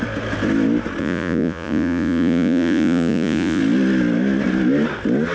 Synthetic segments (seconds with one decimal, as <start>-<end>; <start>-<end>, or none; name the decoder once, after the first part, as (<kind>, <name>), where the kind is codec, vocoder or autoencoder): 1.0-3.6 (vocoder, Vocos)